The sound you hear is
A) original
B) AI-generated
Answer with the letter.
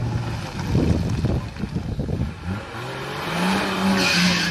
A